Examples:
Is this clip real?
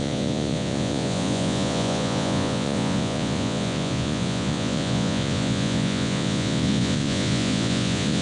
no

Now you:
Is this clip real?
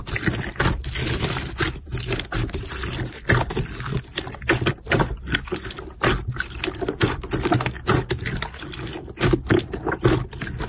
yes